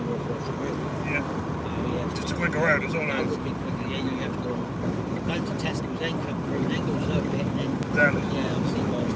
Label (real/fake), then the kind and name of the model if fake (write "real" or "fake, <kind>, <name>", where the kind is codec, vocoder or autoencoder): real